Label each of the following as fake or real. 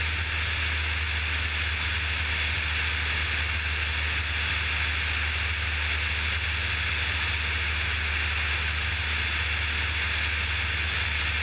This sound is real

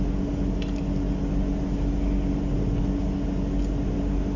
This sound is real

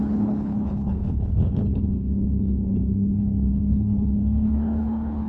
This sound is fake